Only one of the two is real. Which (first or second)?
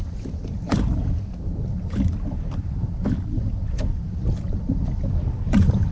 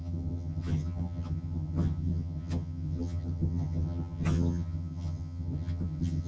first